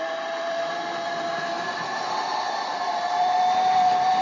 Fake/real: real